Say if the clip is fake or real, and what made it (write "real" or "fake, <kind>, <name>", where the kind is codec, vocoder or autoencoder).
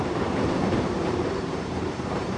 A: fake, vocoder, BigVGAN v2